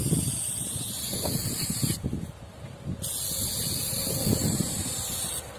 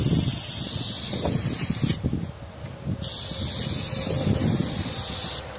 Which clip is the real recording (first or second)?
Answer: second